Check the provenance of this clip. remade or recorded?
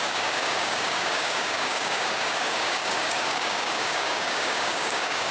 remade